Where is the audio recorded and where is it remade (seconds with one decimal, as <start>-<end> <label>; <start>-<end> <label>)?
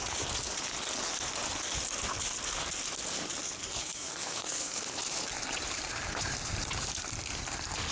0.0-3.6 recorded; 3.6-4.8 remade; 4.8-7.9 recorded